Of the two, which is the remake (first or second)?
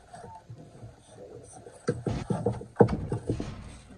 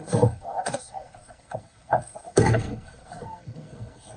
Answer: second